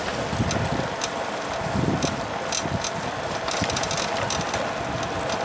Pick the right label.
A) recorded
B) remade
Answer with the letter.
A